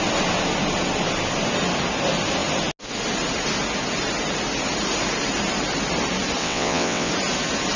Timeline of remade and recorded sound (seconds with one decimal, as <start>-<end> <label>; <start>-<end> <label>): 0.0-6.4 recorded; 6.4-7.1 remade; 7.1-7.8 recorded